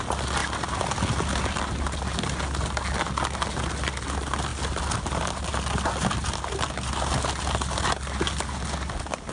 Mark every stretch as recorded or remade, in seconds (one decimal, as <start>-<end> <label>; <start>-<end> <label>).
0.0-9.3 recorded